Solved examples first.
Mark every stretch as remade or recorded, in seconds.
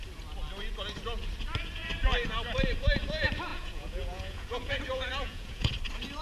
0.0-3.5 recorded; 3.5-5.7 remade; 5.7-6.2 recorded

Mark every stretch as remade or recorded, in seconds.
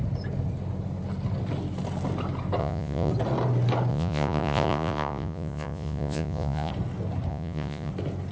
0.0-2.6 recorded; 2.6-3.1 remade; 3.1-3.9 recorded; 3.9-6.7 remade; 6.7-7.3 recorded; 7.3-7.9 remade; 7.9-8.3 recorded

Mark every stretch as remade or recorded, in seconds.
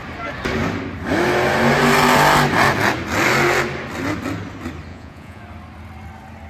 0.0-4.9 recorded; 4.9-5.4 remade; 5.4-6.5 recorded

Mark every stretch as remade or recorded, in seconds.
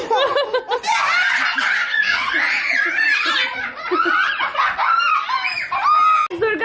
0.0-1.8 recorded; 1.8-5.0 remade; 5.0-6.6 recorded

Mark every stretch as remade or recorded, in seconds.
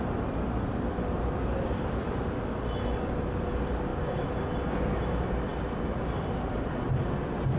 0.0-7.6 recorded